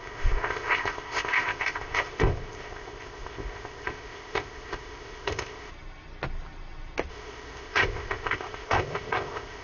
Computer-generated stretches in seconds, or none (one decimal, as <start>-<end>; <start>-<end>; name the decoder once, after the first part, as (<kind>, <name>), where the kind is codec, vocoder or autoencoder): 0.0-5.7 (codec, ZipCodec); 7.1-9.6